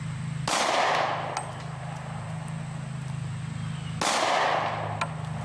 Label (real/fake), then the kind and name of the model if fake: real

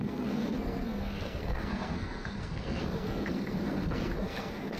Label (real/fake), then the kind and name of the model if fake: fake, codec, SNAC